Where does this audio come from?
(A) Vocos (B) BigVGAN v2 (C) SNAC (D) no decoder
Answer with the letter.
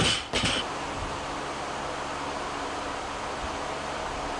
D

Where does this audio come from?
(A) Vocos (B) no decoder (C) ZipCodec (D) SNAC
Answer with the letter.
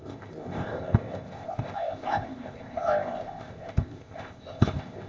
C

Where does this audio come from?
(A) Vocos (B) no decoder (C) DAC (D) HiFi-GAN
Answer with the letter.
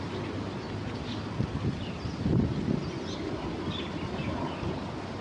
B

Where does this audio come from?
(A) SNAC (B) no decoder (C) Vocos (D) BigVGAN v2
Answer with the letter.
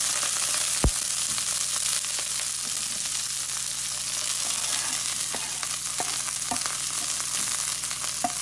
B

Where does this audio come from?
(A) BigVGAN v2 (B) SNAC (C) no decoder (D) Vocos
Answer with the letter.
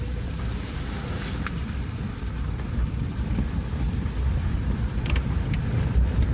A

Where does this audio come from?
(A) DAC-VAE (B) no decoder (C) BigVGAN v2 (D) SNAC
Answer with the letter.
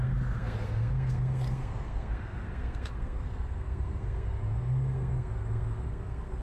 D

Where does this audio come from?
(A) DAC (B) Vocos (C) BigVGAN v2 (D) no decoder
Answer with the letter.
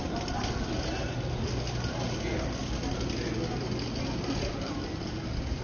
D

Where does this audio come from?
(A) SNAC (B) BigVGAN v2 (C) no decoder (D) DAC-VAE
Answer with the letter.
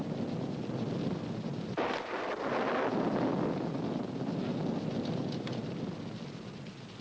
C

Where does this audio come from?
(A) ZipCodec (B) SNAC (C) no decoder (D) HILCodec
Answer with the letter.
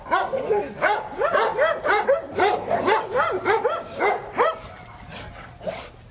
C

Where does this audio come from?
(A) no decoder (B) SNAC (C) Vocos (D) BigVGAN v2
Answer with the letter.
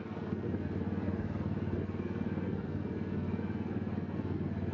B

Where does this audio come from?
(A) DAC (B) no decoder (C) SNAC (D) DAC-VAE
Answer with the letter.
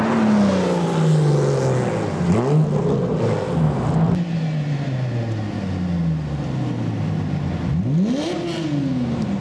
B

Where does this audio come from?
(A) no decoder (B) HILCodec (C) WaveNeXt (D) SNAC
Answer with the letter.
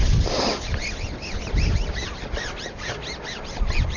A